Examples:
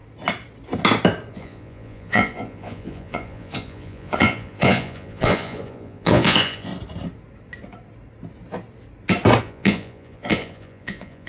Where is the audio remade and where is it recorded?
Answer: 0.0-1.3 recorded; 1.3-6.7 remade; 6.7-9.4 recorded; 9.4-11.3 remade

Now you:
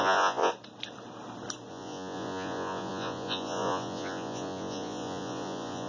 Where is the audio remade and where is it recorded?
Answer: 0.0-0.5 remade; 0.5-1.7 recorded; 1.7-5.9 remade

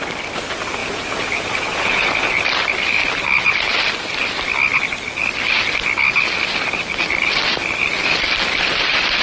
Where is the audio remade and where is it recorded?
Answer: 0.0-0.8 recorded; 0.8-2.3 remade; 2.3-9.2 recorded

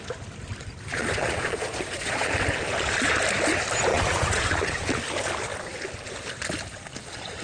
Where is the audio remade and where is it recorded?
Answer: 0.0-0.9 recorded; 0.9-2.3 remade; 2.3-3.9 recorded; 3.9-5.0 remade; 5.0-7.4 recorded

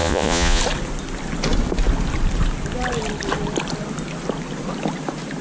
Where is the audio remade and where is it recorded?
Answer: 0.0-0.6 remade; 0.6-5.4 recorded

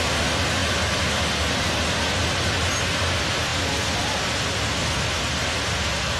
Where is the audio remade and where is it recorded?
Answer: 0.0-6.2 recorded